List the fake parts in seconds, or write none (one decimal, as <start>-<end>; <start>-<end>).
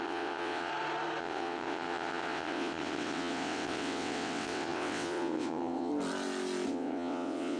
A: 0.0-0.7; 1.2-5.9; 6.7-7.6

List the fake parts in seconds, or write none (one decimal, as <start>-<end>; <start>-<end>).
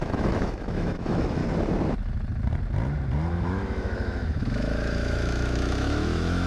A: 0.0-1.4; 3.3-6.5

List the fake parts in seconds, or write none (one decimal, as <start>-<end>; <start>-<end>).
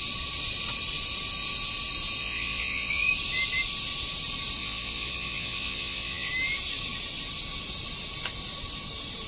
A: 2.2-3.1; 4.6-6.3